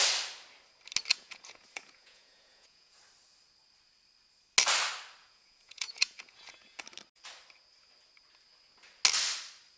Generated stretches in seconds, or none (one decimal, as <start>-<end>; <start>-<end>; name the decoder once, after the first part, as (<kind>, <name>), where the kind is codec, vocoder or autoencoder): 1.1-3.0 (vocoder, Vocos); 5.2-6.8